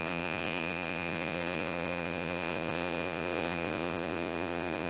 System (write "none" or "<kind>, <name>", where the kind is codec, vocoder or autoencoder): vocoder, Vocos